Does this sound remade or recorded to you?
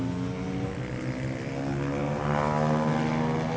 recorded